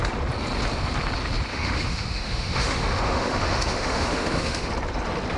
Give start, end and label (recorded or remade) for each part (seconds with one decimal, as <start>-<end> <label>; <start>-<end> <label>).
0.0-1.5 recorded; 1.5-4.7 remade; 4.7-5.4 recorded